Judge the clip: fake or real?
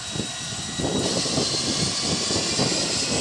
real